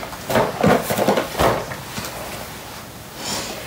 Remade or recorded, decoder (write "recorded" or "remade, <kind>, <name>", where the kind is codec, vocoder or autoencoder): recorded